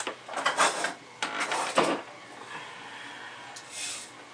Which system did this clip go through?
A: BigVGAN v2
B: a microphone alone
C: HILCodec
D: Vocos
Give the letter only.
B